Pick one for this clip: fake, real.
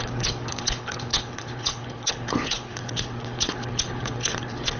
fake